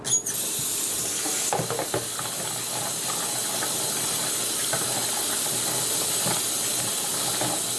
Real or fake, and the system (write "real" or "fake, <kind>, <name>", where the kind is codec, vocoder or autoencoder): real